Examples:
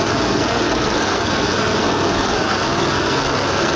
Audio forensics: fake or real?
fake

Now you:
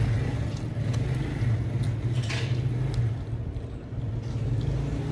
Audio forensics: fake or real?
real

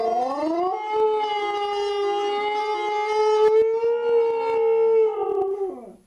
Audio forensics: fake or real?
real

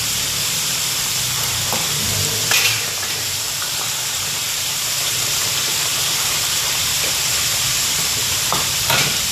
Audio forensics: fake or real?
fake